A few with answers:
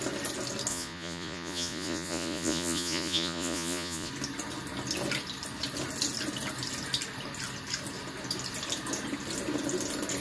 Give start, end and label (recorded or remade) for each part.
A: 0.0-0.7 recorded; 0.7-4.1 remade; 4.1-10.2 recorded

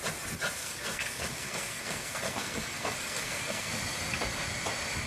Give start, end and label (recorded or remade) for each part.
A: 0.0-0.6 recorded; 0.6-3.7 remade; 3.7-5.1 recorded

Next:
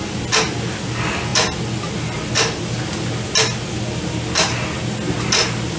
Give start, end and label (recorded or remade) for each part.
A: 0.0-5.8 recorded